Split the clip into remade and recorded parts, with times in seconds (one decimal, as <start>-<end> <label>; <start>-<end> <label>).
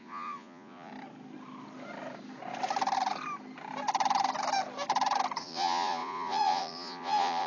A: 0.0-0.9 remade; 0.9-5.4 recorded; 5.4-7.5 remade